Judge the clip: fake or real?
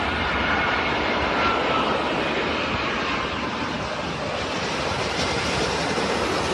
fake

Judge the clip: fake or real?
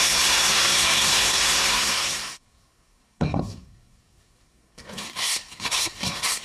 fake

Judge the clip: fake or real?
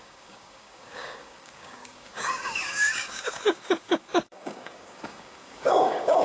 fake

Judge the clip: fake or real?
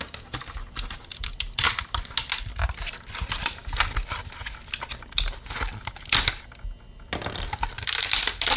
real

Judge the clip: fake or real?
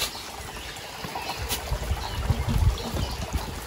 real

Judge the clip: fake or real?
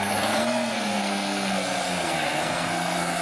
fake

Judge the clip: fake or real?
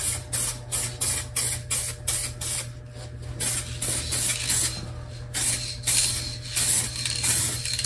real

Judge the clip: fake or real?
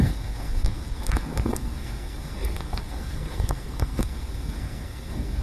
fake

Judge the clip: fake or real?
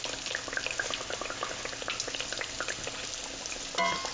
real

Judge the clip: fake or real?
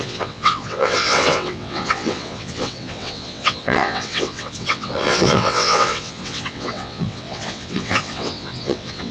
fake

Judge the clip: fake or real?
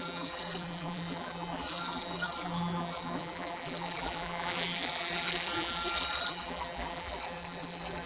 fake